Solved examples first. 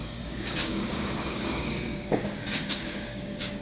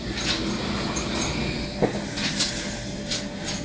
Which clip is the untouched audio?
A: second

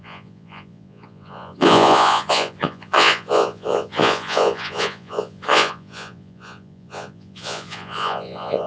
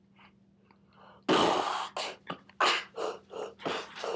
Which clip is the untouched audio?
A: second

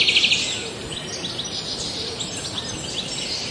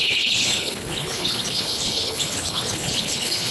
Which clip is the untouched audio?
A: first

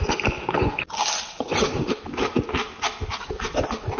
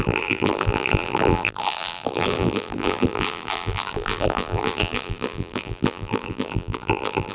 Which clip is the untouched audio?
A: first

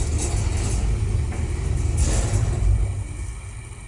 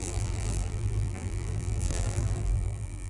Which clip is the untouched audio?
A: first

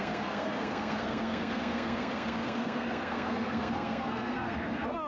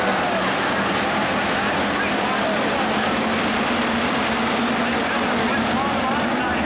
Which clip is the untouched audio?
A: second